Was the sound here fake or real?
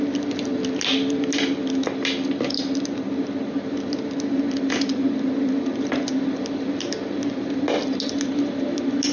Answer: real